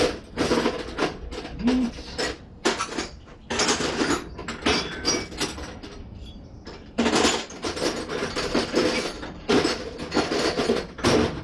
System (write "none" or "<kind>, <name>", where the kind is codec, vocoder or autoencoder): none